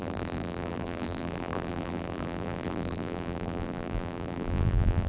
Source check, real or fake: fake